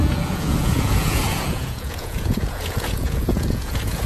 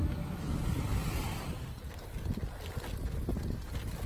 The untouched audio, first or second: second